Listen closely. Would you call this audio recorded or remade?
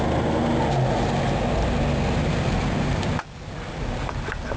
recorded